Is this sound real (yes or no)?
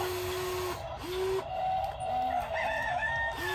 yes